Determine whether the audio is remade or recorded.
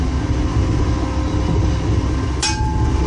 recorded